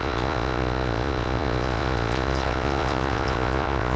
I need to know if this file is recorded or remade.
remade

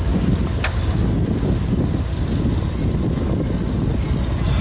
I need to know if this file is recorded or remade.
recorded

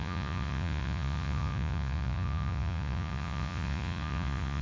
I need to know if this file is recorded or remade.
remade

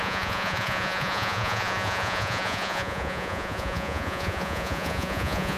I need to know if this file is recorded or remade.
remade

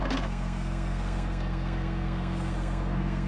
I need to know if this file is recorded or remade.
remade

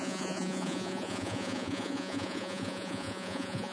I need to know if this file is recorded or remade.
remade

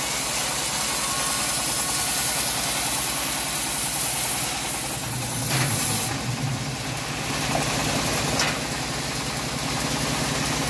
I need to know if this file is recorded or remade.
recorded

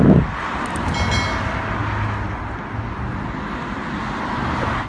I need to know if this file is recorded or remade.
recorded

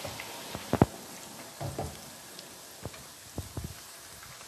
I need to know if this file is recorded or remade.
recorded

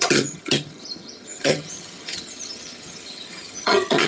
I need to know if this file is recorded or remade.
remade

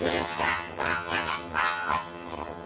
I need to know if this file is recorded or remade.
remade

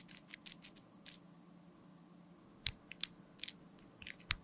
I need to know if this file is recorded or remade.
recorded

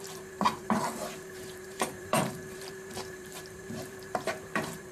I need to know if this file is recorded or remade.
remade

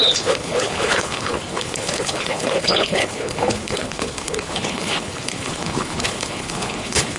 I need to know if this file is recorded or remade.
remade